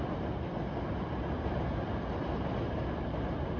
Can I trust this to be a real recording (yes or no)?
yes